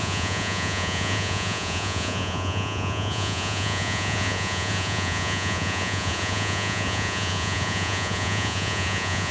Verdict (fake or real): fake